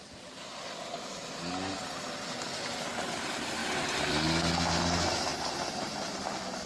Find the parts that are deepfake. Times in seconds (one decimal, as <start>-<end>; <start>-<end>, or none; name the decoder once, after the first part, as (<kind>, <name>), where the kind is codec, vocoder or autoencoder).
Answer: none